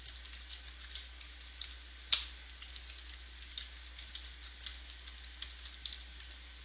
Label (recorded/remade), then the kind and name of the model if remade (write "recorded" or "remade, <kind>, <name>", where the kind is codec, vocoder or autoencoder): recorded